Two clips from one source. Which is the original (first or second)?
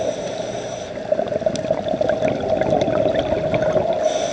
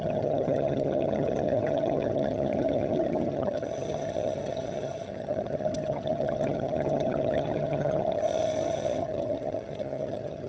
first